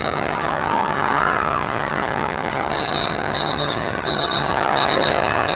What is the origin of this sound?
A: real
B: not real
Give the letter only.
B